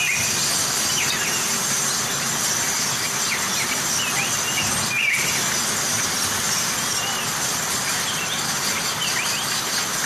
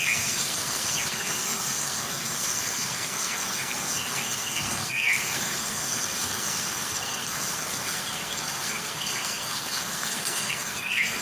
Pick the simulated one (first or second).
second